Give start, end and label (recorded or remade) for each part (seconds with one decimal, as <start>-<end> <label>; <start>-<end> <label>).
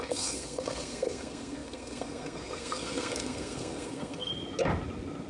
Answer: 0.0-4.3 remade; 4.3-5.3 recorded